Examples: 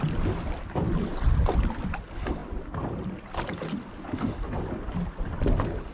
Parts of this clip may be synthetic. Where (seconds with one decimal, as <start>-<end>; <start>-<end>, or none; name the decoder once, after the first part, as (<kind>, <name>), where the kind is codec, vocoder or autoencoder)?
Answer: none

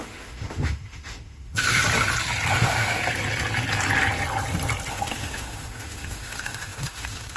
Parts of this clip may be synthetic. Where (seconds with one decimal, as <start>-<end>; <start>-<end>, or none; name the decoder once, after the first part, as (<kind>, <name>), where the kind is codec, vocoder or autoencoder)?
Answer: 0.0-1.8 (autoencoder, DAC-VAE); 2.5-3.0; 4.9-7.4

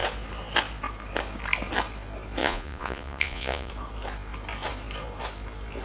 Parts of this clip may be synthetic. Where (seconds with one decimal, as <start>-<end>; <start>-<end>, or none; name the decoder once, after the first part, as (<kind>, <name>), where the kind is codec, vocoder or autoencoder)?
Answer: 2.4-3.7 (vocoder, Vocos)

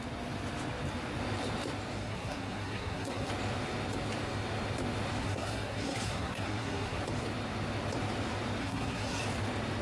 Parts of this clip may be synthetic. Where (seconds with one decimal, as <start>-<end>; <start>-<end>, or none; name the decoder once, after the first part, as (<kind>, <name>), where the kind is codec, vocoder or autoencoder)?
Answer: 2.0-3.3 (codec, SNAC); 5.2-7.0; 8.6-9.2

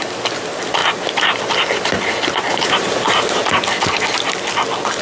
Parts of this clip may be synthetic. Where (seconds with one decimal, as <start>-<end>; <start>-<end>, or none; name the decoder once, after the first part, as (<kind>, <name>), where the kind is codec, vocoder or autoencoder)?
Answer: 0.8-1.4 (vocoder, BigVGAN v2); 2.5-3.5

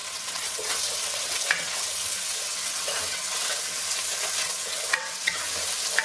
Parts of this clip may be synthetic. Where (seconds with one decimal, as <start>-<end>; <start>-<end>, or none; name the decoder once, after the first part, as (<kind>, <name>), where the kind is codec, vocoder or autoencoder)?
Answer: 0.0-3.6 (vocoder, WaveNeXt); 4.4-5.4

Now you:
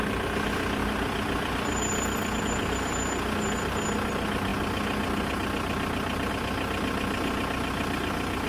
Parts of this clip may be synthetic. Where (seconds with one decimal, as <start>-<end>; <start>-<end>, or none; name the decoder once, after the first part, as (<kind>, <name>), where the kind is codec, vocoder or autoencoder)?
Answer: 0.8-2.4 (vocoder, BigVGAN v2)